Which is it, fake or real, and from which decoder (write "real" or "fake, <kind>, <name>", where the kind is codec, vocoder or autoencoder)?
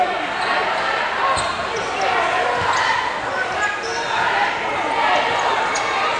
real